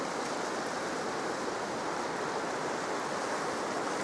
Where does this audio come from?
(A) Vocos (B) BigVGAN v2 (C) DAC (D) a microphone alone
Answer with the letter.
D